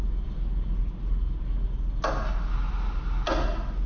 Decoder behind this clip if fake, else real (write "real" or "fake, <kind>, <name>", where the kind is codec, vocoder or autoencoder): real